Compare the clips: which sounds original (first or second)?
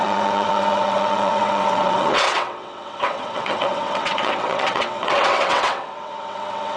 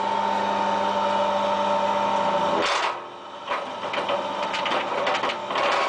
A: second